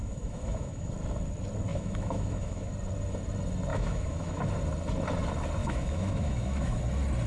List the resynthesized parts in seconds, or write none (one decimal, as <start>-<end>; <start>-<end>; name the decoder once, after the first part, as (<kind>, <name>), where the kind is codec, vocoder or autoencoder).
0.0-0.9 (autoencoder, DAC-VAE); 1.7-2.7; 3.7-4.4; 5.6-6.8

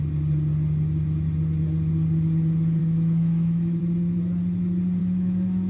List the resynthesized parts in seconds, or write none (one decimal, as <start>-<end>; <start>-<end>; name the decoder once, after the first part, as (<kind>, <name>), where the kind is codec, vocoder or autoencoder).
2.8-3.8 (autoencoder, DAC-VAE); 5.0-5.7